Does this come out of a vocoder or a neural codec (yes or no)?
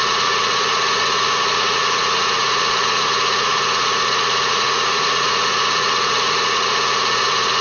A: yes